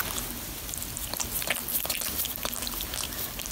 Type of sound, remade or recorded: recorded